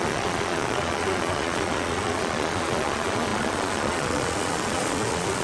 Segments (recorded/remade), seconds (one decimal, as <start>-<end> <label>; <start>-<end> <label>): 0.0-5.4 remade